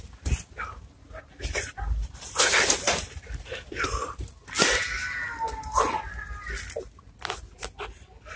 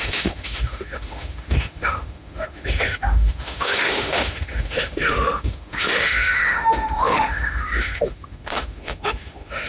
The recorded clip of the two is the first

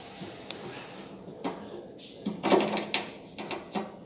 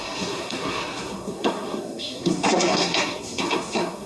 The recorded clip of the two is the first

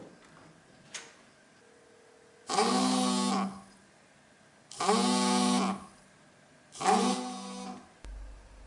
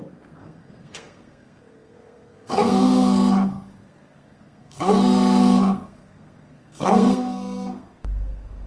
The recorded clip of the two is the first